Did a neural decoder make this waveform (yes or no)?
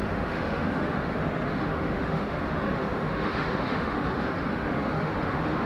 yes